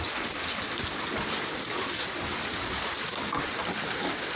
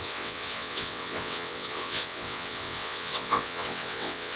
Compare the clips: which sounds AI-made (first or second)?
second